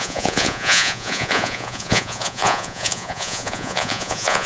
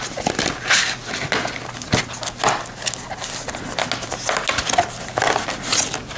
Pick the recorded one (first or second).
second